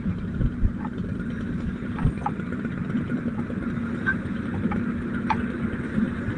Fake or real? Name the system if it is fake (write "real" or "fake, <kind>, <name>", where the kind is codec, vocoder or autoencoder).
fake, vocoder, BigVGAN v2